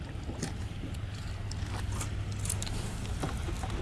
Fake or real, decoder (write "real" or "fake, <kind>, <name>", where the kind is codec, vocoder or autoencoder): real